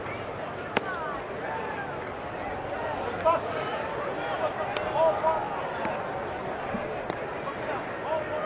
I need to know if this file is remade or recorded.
recorded